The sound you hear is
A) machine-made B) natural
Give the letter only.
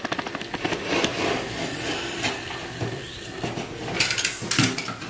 B